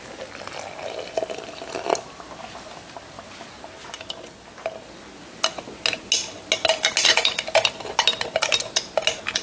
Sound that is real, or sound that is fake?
real